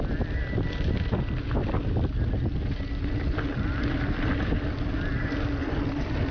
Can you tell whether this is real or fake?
real